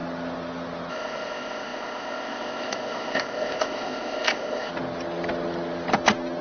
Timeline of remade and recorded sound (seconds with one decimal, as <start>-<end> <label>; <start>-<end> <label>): 0.0-0.9 recorded; 0.9-4.7 remade; 4.7-6.4 recorded

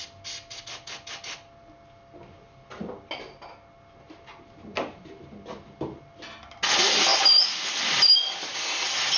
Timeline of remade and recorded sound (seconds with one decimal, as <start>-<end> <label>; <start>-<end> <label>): 0.0-9.2 recorded

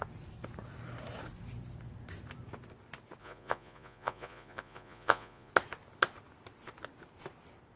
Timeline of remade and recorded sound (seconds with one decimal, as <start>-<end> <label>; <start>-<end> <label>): 0.0-3.2 recorded; 3.2-5.5 remade; 5.5-7.8 recorded